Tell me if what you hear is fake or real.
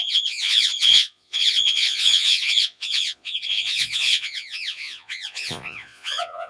fake